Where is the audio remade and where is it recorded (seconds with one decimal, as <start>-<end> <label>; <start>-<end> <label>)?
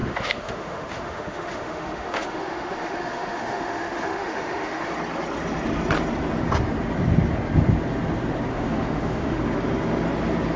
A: 0.0-4.9 remade; 4.9-8.5 recorded; 8.5-9.4 remade; 9.4-10.6 recorded